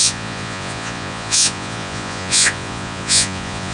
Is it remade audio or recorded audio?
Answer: remade